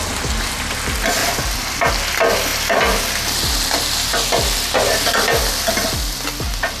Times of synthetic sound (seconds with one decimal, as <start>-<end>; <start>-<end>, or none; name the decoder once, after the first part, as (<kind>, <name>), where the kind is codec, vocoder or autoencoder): 1.2-1.9 (vocoder, BigVGAN v2)